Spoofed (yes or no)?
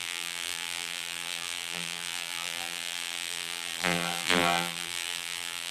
yes